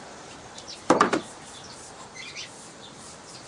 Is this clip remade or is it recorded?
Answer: remade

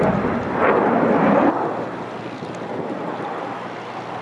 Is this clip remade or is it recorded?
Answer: recorded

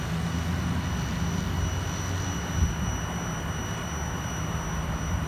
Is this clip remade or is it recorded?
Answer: recorded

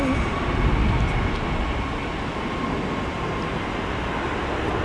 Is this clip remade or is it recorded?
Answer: recorded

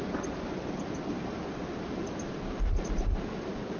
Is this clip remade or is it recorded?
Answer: remade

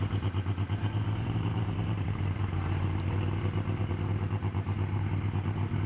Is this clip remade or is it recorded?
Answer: remade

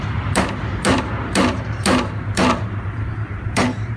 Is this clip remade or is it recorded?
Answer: remade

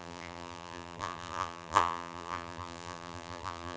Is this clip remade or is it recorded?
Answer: remade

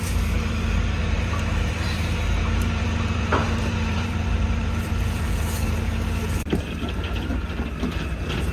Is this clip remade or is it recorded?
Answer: remade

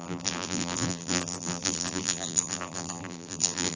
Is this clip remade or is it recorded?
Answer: remade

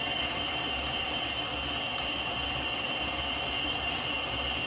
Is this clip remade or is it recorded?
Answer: remade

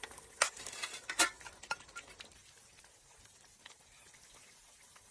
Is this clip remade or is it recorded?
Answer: recorded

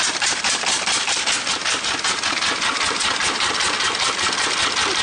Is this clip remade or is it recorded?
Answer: recorded